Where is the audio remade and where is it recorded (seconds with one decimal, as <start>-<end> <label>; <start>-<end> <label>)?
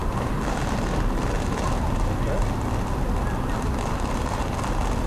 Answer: 0.0-5.1 recorded